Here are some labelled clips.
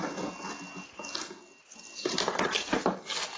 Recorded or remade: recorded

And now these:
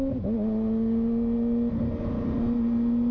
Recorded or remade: recorded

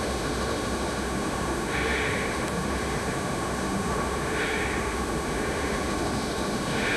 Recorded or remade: remade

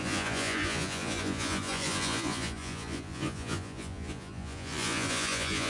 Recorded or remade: remade